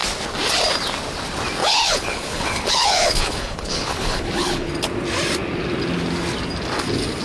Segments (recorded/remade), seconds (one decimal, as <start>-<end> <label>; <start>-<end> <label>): 0.0-1.6 recorded; 1.6-4.7 remade; 4.7-7.2 recorded